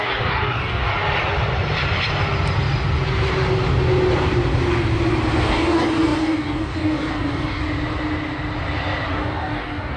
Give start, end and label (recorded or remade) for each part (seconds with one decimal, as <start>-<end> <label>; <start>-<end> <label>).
0.0-0.9 remade; 0.9-5.4 recorded; 5.4-7.6 remade; 7.6-9.1 recorded; 9.1-10.0 remade